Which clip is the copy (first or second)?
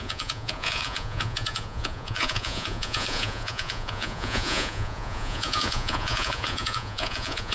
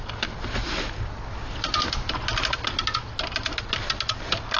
first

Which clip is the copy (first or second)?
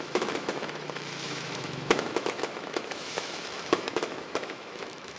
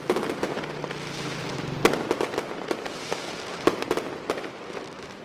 first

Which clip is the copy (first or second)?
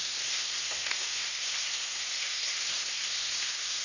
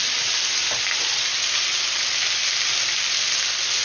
first